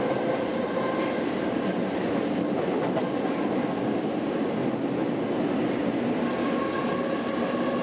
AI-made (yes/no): no